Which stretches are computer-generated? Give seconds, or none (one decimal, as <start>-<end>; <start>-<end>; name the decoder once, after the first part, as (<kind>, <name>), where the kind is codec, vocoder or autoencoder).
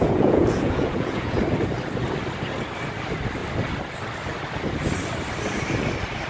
0.0-1.4 (vocoder, Vocos)